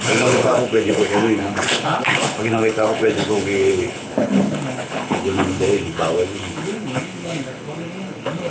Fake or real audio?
fake